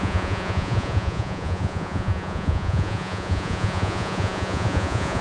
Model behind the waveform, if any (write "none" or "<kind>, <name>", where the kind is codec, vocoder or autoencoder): vocoder, Vocos